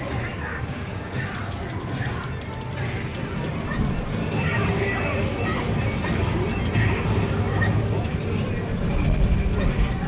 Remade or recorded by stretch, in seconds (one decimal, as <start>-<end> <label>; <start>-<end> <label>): 0.0-0.5 recorded; 0.5-1.2 remade; 1.2-4.2 recorded; 4.2-5.0 remade; 5.0-10.1 recorded